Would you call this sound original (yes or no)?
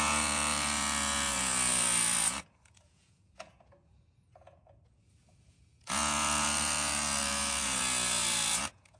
no